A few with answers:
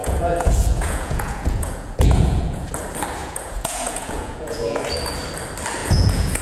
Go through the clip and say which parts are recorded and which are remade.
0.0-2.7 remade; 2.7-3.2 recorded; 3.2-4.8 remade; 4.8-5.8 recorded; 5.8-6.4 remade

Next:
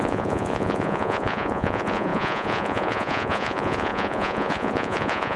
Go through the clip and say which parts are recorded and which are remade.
0.0-5.4 remade

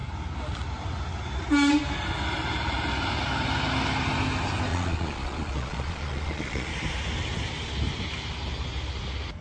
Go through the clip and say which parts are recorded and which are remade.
0.0-4.7 recorded; 4.7-6.7 remade; 6.7-9.4 recorded

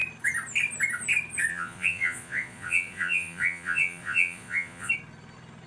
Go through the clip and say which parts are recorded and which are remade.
0.0-1.5 recorded; 1.5-4.9 remade; 4.9-5.7 recorded

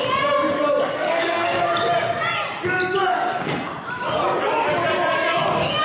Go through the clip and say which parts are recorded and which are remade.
0.0-0.9 recorded; 0.9-1.7 remade; 1.7-3.0 recorded; 3.0-3.7 remade; 3.7-5.8 recorded

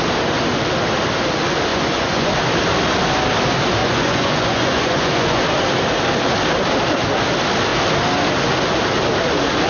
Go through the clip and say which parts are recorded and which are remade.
0.0-1.7 recorded; 1.7-2.3 remade; 2.3-3.8 recorded; 3.8-5.4 remade; 5.4-9.7 recorded

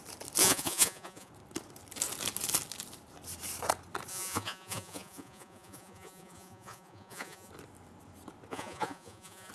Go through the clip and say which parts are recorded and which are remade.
0.0-0.4 recorded; 0.4-1.3 remade; 1.3-4.1 recorded; 4.1-7.5 remade; 7.5-8.5 recorded; 8.5-9.5 remade